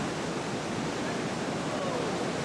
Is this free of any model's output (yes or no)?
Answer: yes